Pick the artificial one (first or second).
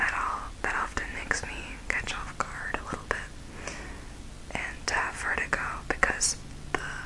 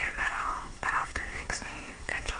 second